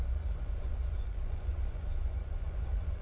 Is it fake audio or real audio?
fake